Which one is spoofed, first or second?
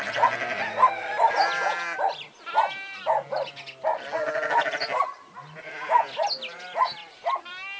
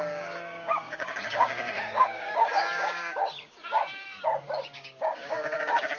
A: second